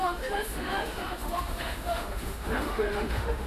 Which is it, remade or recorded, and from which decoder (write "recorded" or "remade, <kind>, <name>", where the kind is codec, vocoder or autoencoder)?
remade, autoencoder, DAC-VAE